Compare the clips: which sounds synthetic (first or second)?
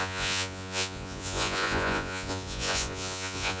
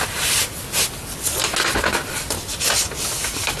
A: first